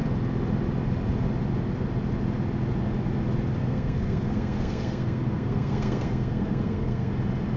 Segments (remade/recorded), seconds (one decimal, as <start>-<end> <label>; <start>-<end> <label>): 0.0-3.6 recorded; 3.6-7.1 remade; 7.1-7.6 recorded